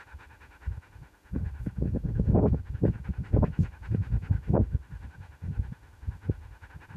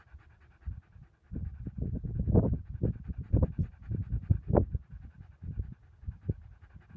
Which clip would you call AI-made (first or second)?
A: first